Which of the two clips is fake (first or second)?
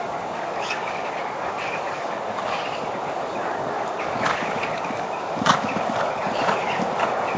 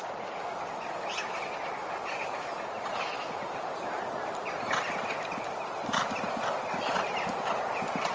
first